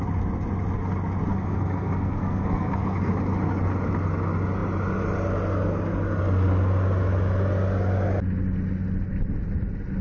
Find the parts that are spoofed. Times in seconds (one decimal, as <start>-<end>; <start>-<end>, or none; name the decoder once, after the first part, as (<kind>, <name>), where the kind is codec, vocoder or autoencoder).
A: 1.3-3.1 (codec, SNAC)

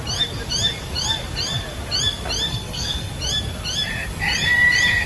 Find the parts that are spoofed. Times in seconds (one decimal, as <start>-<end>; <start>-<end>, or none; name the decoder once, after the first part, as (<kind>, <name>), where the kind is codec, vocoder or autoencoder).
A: 2.5-3.1 (codec, SNAC)

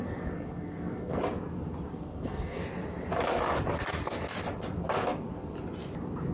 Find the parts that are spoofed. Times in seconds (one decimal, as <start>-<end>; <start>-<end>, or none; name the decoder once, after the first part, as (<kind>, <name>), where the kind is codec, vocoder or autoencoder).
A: 0.0-1.2 (codec, SNAC); 1.9-2.6

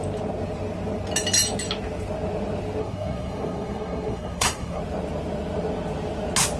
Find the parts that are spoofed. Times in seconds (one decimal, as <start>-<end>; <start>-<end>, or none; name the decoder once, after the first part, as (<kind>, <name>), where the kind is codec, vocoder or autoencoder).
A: 2.8-4.8 (codec, SNAC)